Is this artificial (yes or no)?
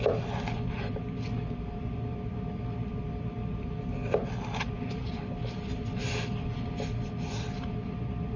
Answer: no